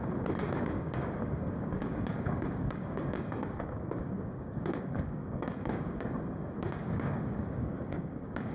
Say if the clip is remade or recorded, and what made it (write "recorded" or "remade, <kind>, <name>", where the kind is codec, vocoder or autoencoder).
remade, codec, DAC